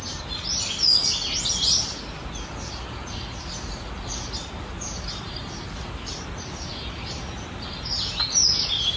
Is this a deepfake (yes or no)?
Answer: no